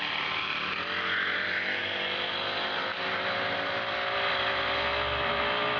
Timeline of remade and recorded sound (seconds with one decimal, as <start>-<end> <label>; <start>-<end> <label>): 0.0-5.8 recorded